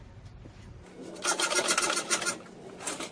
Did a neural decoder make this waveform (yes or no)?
no